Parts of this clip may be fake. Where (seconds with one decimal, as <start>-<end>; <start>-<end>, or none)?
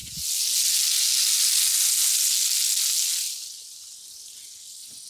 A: none